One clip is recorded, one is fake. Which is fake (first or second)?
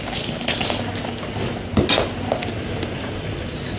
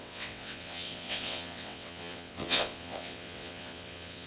second